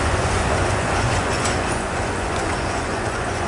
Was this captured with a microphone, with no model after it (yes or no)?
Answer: no